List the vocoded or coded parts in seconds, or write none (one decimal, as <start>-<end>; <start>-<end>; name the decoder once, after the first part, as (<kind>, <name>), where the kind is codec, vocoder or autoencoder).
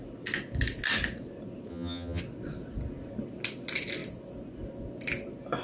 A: 1.7-2.2 (vocoder, HiFi-GAN)